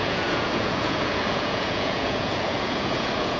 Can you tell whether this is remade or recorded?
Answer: remade